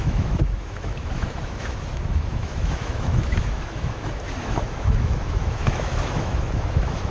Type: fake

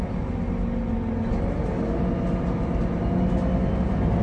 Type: real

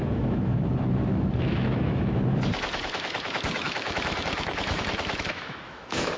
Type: fake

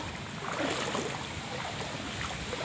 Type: real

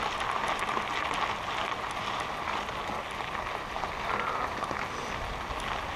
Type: real